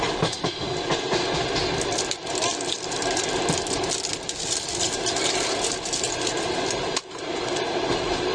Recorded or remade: recorded